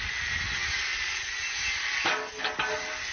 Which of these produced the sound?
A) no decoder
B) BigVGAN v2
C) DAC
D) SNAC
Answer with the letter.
A